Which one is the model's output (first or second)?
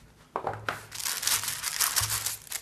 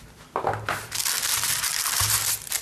second